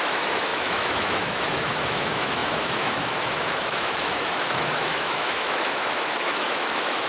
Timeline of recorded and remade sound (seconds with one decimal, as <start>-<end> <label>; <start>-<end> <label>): 0.0-7.1 remade